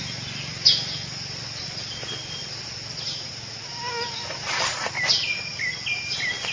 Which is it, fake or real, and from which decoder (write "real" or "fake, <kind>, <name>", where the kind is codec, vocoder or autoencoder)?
real